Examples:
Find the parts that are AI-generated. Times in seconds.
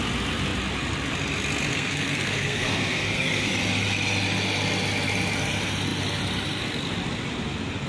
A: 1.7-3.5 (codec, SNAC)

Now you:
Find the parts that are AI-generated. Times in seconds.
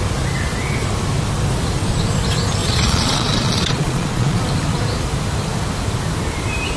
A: 2.6-4.4 (vocoder, Vocos)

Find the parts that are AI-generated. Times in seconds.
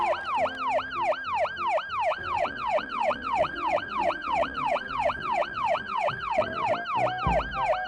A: 2.1-6.7 (vocoder, WaveNeXt)